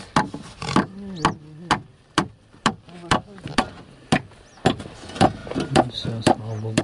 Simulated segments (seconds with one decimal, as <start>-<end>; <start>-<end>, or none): 1.9-4.3